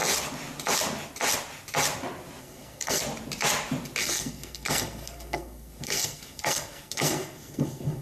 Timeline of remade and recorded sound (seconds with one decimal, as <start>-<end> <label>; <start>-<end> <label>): 0.0-2.4 recorded; 2.4-3.0 remade; 3.0-4.0 recorded; 4.0-8.0 remade